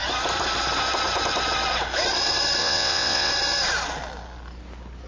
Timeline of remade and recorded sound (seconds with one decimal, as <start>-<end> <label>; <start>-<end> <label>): 0.0-2.6 recorded; 2.6-3.3 remade; 3.3-5.1 recorded